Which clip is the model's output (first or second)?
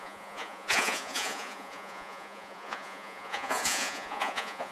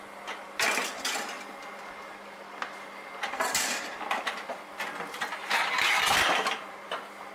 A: first